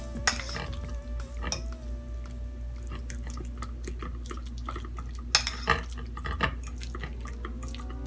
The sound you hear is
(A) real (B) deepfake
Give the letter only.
A